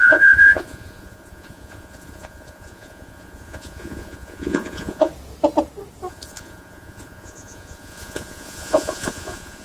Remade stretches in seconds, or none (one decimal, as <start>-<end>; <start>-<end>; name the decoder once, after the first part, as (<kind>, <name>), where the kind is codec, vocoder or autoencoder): 0.0-5.1 (vocoder, Vocos); 6.1-9.6